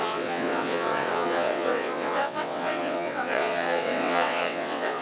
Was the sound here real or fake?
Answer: fake